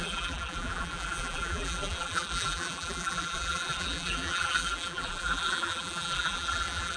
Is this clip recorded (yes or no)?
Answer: no